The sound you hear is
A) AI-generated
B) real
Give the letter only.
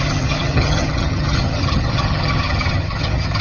A